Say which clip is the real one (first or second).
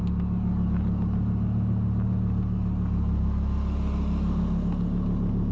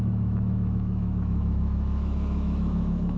first